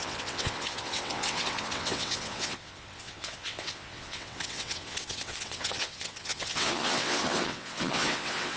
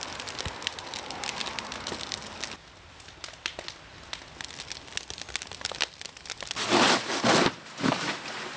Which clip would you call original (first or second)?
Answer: second